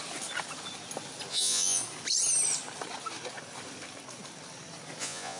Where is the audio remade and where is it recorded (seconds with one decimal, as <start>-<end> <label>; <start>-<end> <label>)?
0.0-1.3 recorded; 1.3-1.8 remade; 1.8-5.0 recorded; 5.0-5.4 remade